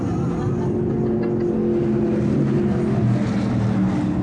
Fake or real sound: real